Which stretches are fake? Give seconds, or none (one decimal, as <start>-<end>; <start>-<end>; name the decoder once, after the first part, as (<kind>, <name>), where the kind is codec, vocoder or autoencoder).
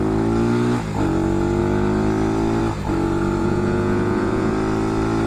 3.4-4.5 (vocoder, Vocos)